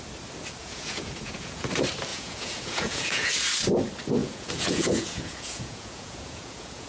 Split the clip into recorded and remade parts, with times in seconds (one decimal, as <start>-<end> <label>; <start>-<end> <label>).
0.0-0.6 recorded; 0.6-1.7 remade; 1.7-2.1 recorded; 2.1-3.3 remade; 3.3-4.2 recorded; 4.2-6.9 remade